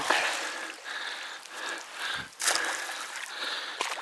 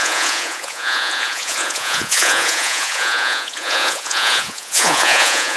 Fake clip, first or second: second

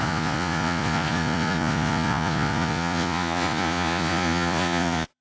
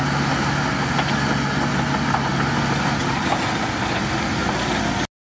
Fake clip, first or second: first